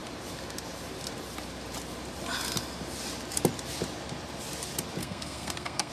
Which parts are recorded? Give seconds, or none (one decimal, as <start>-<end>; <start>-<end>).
0.0-5.0